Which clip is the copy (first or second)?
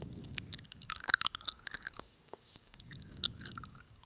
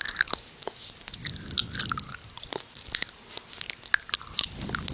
first